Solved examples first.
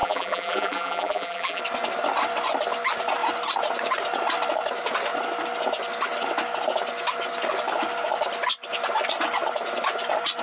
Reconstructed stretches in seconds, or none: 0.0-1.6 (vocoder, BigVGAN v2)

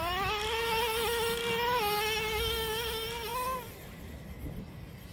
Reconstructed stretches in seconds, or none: none

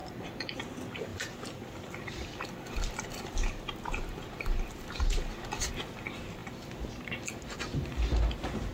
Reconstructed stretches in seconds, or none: 0.0-0.6 (vocoder, BigVGAN v2); 1.1-5.7; 6.4-6.9

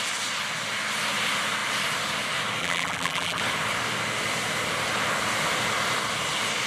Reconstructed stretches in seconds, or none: 2.6-3.4 (vocoder, BigVGAN v2)

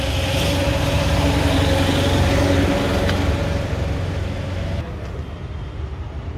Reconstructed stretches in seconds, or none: 0.6-1.6 (vocoder, BigVGAN v2)

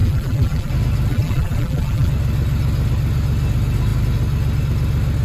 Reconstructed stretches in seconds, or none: 0.0-0.7 (vocoder, BigVGAN v2); 1.1-2.1